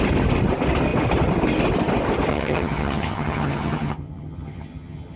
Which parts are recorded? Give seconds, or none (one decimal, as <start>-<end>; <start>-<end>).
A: 0.0-2.3